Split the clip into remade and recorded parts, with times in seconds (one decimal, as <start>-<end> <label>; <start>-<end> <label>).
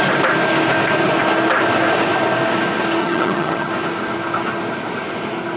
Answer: 0.0-3.0 recorded; 3.0-3.7 remade; 3.7-5.6 recorded